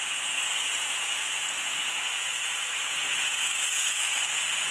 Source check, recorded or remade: remade